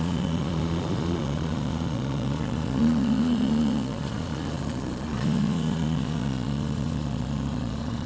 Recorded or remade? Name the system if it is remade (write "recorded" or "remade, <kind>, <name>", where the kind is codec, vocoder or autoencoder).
remade, vocoder, Vocos